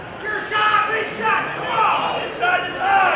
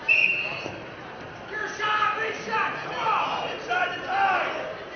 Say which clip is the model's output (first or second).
second